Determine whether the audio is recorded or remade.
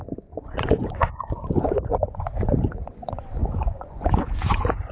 remade